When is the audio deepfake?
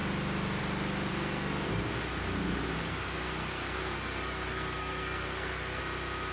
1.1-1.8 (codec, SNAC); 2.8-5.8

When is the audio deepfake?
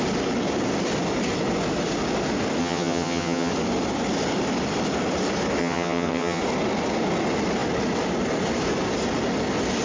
2.6-3.5 (vocoder, HiFi-GAN); 5.6-6.4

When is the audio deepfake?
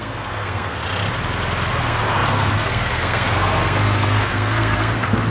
0.0-0.8 (codec, SNAC); 1.7-5.3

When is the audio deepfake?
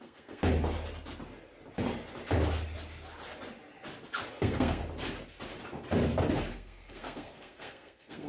0.0-0.4 (codec, SNAC); 4.3-4.8; 6.5-8.3